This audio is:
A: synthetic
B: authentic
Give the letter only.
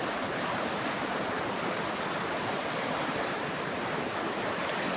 B